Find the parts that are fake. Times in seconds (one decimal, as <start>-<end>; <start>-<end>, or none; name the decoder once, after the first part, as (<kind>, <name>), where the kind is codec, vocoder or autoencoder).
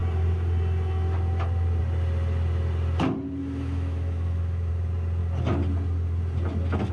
3.4-4.7 (autoencoder, DAC-VAE)